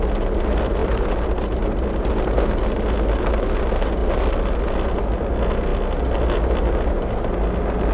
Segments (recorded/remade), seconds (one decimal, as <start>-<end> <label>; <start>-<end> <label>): 0.0-7.9 recorded